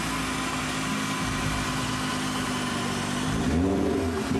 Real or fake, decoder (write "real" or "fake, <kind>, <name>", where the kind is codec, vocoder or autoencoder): real